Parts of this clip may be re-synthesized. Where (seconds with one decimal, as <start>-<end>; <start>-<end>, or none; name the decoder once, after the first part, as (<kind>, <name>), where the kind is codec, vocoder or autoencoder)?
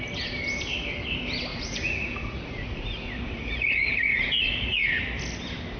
1.5-5.0 (vocoder, Vocos)